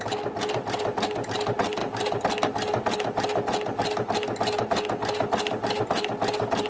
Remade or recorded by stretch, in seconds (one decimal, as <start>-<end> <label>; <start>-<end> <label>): 0.0-6.7 recorded